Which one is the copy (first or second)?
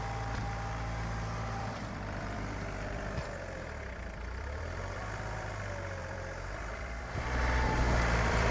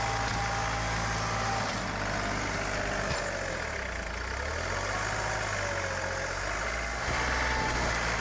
first